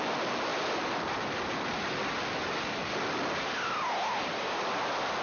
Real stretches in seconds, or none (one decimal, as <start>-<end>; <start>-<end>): 0.0-5.2